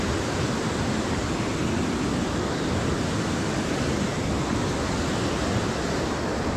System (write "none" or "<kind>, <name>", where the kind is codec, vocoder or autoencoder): none